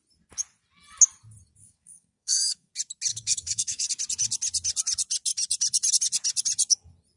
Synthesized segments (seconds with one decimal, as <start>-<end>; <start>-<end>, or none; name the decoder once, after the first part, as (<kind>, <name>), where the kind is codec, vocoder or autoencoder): 1.6-2.7 (codec, SNAC); 3.1-3.9